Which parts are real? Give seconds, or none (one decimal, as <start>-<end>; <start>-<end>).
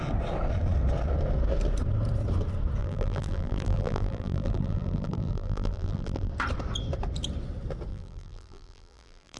0.0-2.8; 6.3-7.9